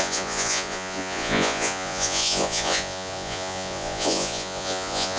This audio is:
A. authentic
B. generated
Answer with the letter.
B